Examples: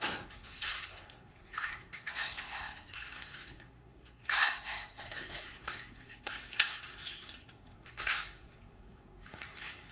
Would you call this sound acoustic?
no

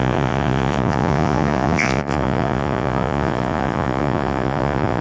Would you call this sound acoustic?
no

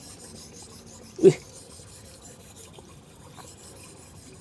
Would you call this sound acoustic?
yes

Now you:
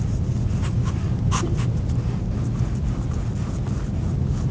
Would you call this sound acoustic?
yes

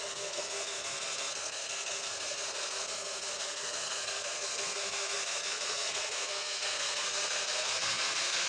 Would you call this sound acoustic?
no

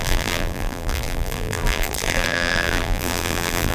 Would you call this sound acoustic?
no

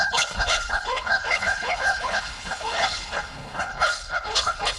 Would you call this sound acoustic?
no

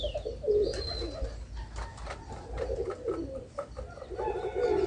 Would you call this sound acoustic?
yes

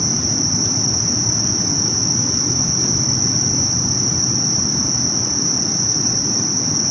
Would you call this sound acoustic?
yes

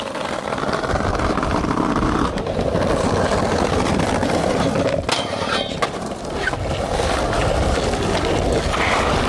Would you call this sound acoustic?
yes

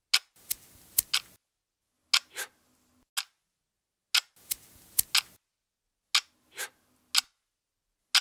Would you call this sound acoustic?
yes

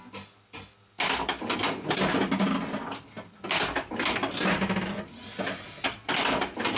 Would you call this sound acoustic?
yes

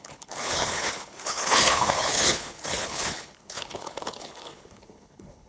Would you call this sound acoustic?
no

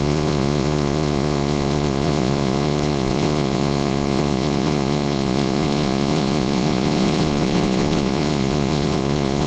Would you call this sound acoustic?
no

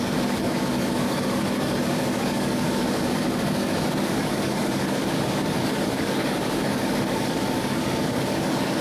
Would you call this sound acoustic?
no